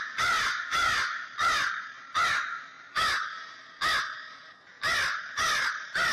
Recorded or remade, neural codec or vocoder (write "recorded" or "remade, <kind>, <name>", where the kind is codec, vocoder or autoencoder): recorded